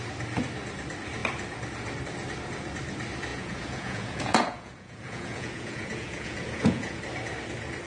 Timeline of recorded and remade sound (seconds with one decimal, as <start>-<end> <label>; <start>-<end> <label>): 0.0-3.3 recorded; 3.3-7.0 remade; 7.0-7.9 recorded